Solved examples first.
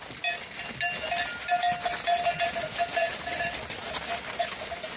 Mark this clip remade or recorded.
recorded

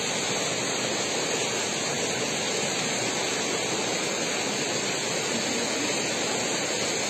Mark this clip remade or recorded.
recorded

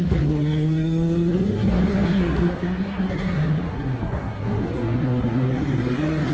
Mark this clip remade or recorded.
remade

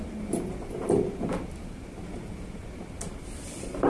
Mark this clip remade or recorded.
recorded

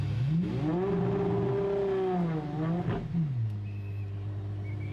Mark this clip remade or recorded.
recorded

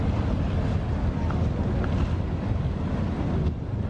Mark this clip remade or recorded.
recorded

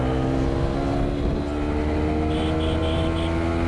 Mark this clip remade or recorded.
recorded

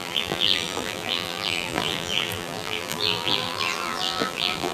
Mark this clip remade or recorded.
remade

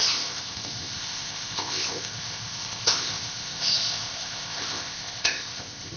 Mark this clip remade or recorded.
remade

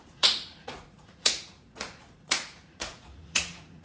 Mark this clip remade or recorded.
remade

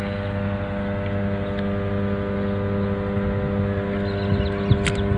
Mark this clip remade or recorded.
recorded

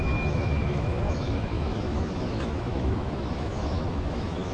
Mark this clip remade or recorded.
remade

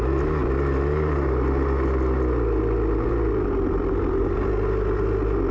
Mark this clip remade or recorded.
recorded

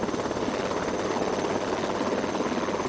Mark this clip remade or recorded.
recorded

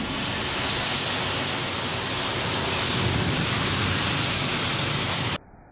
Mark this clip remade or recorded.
recorded